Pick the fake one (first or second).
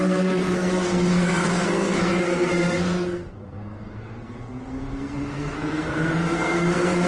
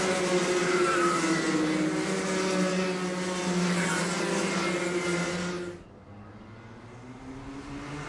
first